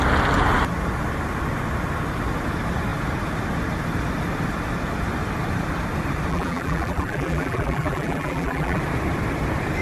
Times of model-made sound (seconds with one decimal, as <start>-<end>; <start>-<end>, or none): 6.3-8.8